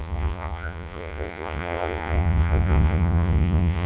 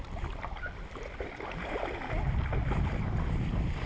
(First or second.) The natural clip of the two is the second